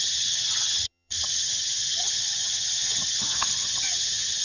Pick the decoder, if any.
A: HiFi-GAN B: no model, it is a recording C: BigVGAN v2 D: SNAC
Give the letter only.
A